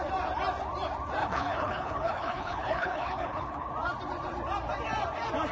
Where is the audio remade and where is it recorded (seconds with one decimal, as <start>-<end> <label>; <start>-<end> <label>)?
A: 0.0-1.2 recorded; 1.2-3.7 remade; 3.7-5.5 recorded